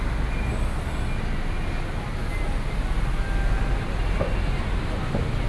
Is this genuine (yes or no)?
yes